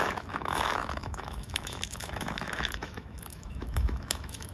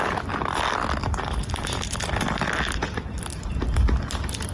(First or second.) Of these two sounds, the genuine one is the second